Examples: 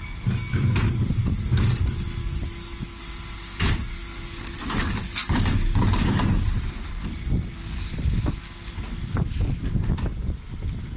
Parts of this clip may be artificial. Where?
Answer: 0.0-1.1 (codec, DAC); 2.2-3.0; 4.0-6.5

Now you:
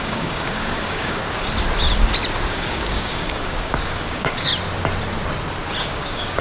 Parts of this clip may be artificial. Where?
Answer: 0.0-1.2 (codec, DAC); 2.5-4.5; 5.8-6.4